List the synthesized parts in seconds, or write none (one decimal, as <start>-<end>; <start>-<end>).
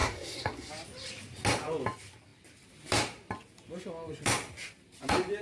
0.0-0.7